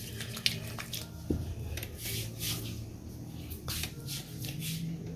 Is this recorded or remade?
recorded